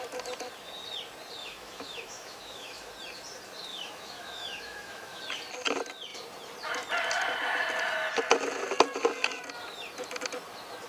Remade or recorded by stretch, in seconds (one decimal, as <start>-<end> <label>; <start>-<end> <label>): 0.0-1.4 recorded; 1.4-2.9 remade; 2.9-3.7 recorded; 3.7-5.2 remade; 5.2-10.9 recorded